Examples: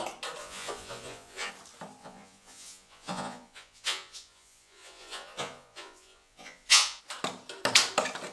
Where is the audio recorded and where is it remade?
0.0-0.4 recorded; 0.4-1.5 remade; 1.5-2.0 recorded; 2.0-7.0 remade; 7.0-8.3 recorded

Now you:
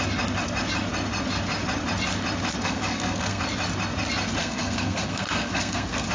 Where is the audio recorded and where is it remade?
0.0-2.6 recorded; 2.6-3.4 remade; 3.4-4.4 recorded; 4.4-6.1 remade